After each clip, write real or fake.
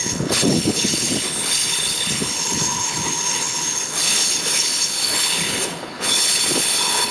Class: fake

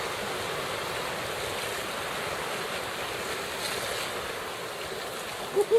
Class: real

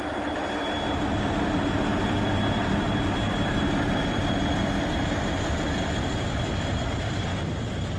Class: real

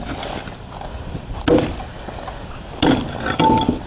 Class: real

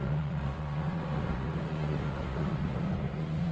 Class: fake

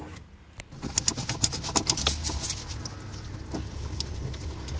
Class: real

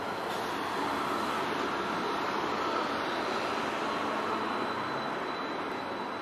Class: real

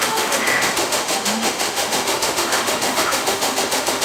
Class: fake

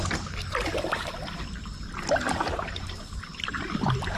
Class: real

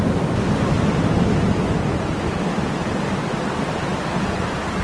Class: real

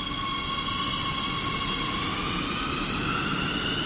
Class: real